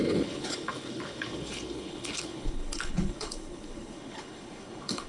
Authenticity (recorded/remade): remade